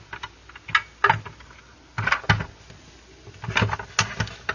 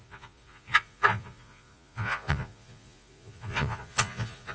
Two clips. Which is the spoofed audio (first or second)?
second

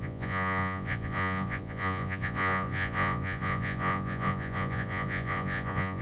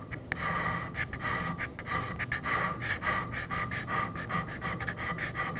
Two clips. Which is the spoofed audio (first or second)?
first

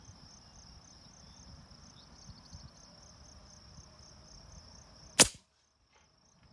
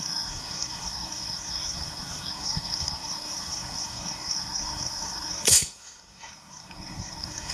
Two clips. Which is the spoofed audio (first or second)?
second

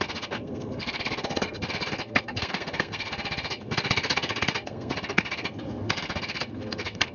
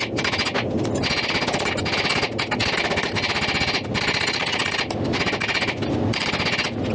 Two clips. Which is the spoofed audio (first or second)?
first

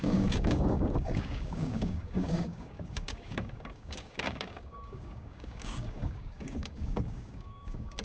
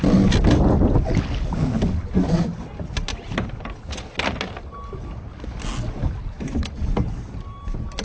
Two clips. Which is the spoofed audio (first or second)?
first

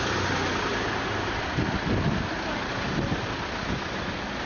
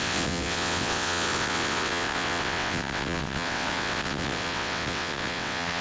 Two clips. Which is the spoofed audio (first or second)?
second